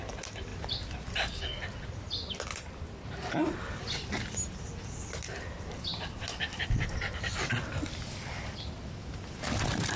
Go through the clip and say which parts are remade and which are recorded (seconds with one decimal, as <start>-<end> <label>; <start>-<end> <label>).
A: 0.0-0.5 recorded; 0.5-1.1 remade; 1.1-10.0 recorded